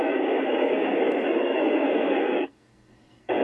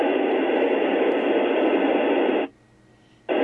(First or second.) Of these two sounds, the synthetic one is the first